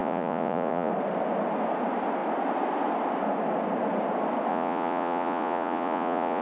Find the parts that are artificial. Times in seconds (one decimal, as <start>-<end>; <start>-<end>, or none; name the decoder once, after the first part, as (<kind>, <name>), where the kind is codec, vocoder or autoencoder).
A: 0.0-0.9 (vocoder, Vocos); 4.5-6.4